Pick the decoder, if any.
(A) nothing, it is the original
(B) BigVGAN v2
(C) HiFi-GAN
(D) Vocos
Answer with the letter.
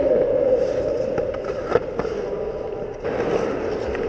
A